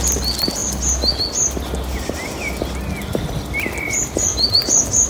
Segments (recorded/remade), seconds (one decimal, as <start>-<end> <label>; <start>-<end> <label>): 0.0-5.1 recorded